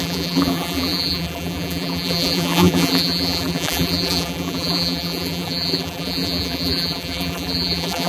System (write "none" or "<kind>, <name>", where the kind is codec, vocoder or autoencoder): vocoder, BigVGAN v2